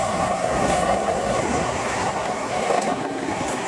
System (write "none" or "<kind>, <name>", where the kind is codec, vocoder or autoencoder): codec, SNAC